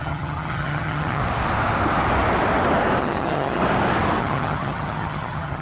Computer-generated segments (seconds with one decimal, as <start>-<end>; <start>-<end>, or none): 0.0-1.2; 3.0-3.6; 4.2-5.6